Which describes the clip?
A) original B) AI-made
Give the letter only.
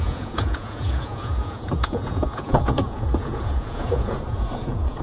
B